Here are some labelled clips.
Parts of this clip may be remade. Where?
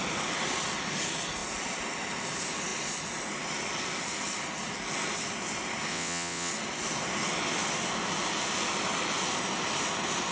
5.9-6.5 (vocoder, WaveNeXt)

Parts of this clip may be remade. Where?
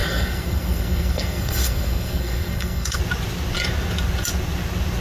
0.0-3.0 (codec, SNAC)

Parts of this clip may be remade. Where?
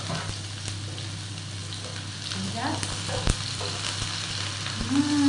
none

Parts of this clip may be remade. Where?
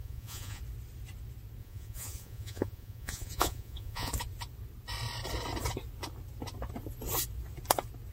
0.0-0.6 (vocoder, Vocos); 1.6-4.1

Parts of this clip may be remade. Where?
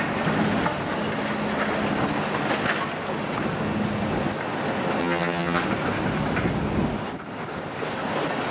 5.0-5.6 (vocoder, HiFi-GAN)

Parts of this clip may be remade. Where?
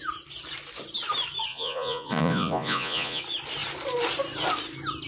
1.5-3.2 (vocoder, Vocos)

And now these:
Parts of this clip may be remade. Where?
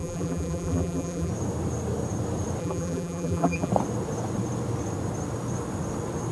0.0-1.3 (vocoder, BigVGAN v2); 2.6-3.7